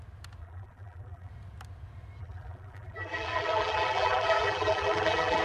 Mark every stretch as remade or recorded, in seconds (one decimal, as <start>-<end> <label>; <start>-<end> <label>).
0.0-0.4 recorded; 0.4-1.3 remade; 1.3-2.2 recorded; 2.2-5.4 remade